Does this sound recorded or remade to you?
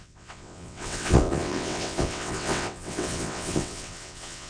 remade